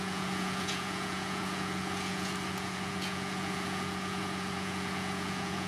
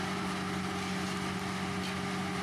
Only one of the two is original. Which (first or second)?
second